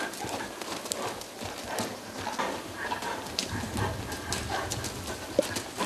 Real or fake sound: real